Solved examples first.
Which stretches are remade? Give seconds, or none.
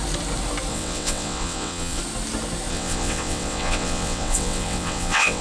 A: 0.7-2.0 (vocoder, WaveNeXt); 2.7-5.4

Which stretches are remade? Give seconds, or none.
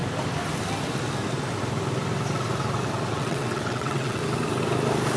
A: 3.1-4.2 (vocoder, WaveNeXt)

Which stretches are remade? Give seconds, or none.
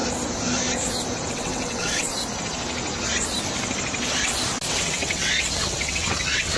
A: 1.3-2.1 (vocoder, WaveNeXt); 4.7-6.6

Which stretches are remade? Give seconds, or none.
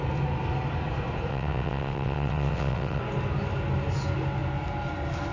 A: 1.3-3.0 (vocoder, WaveNeXt)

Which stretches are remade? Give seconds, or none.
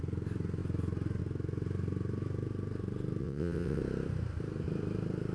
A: 3.2-3.8 (vocoder, WaveNeXt)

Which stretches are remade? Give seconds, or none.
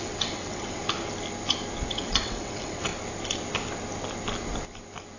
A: 0.0-0.8 (vocoder, WaveNeXt); 1.9-2.9